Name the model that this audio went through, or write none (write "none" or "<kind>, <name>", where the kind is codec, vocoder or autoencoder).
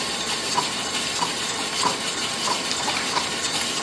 none